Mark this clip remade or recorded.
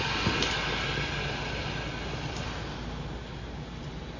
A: recorded